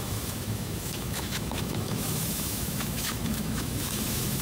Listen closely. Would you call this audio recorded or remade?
remade